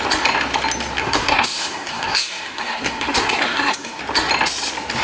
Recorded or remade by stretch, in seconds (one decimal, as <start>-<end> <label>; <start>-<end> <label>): 0.0-1.0 recorded; 1.0-4.0 remade; 4.0-5.0 recorded